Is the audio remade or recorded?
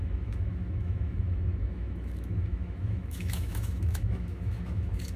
remade